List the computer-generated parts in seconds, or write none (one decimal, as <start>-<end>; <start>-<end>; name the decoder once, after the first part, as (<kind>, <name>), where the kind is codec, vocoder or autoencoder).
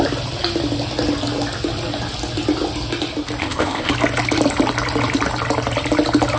3.4-3.9 (codec, ZipCodec)